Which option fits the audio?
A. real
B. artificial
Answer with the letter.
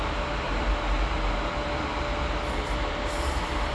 A